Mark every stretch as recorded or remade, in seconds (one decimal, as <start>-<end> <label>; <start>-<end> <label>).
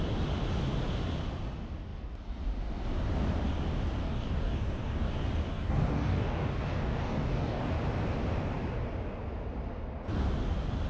0.0-4.0 recorded; 4.0-5.1 remade; 5.1-5.5 recorded; 5.5-7.7 remade; 7.7-10.9 recorded